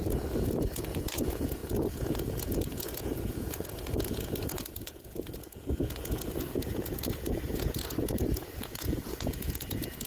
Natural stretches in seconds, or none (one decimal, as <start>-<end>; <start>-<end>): none